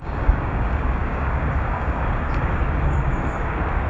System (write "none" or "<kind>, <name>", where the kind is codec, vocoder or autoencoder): codec, DAC